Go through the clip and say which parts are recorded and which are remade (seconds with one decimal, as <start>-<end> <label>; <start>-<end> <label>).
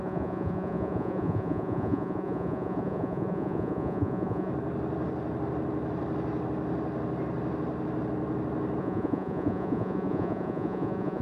0.0-4.5 remade; 4.5-8.8 recorded; 8.8-11.2 remade